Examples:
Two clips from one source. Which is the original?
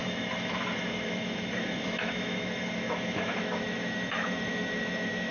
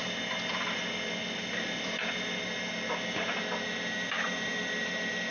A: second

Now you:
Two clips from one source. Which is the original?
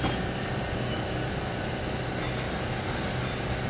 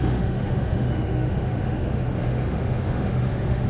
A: first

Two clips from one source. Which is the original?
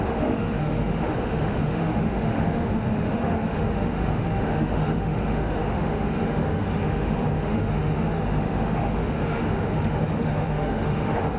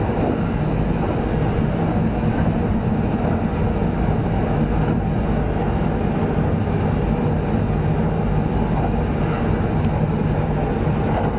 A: second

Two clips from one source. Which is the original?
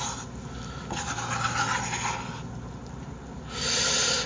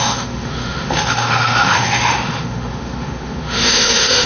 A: first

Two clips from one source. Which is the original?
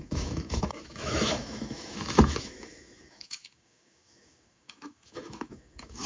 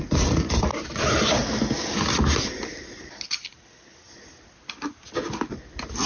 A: second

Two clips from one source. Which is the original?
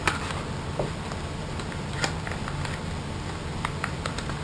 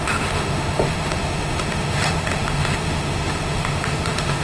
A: first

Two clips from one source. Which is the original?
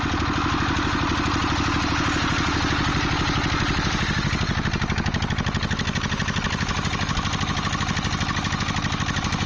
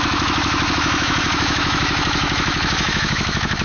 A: first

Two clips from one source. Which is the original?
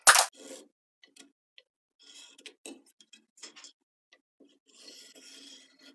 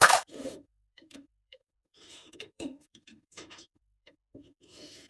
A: first